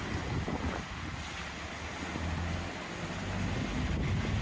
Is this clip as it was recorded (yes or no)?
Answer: yes